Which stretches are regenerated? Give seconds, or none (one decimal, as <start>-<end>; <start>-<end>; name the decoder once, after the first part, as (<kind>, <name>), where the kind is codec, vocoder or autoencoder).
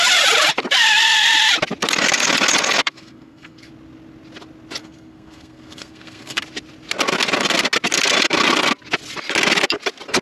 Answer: 2.8-3.7 (codec, SNAC); 4.8-6.4